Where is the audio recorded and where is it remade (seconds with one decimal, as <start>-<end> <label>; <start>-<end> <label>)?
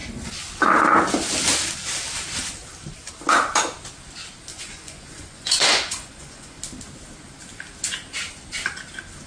0.0-4.5 recorded; 4.5-6.6 remade; 6.6-9.3 recorded